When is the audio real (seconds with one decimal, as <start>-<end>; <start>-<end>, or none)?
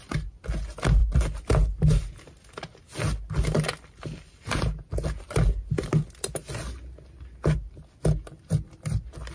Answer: 0.0-9.3